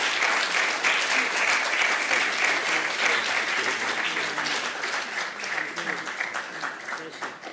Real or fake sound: real